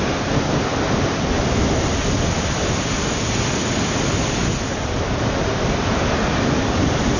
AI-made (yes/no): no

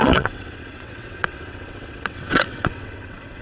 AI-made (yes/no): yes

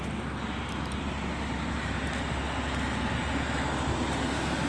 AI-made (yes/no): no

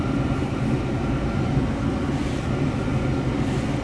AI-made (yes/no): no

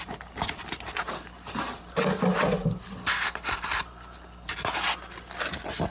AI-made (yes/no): no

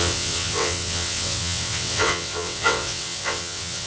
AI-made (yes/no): yes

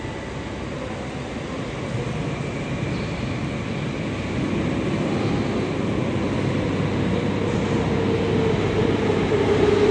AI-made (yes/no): no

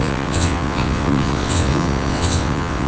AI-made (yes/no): yes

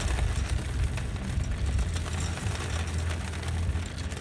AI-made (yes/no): no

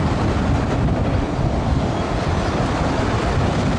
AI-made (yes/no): no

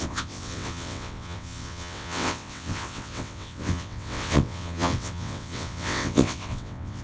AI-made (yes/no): yes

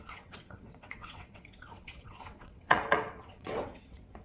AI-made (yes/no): yes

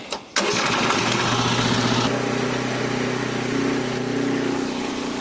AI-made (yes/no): no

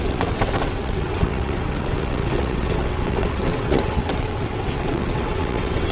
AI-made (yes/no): yes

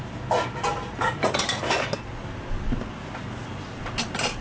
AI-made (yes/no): no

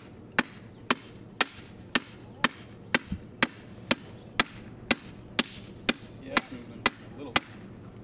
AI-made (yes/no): no